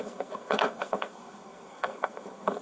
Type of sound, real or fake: fake